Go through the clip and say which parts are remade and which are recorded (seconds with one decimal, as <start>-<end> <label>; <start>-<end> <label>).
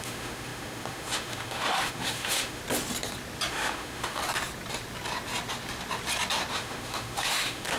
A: 0.0-2.6 remade; 2.6-3.5 recorded; 3.5-4.2 remade; 4.2-6.5 recorded; 6.5-7.8 remade